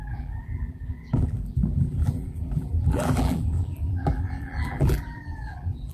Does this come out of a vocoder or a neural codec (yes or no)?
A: yes